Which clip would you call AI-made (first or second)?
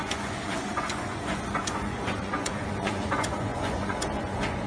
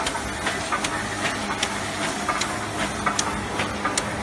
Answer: first